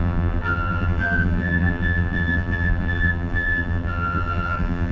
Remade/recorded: remade